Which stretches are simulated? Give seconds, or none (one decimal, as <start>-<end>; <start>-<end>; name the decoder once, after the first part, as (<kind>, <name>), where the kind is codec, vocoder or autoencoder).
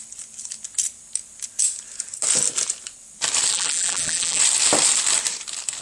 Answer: 3.5-4.4 (vocoder, BigVGAN v2)